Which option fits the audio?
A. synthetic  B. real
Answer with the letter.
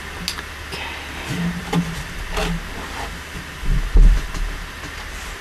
B